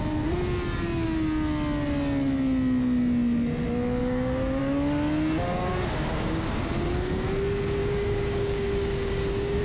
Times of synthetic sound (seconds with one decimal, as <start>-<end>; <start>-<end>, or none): 4.0-4.6; 5.7-6.6; 7.8-9.6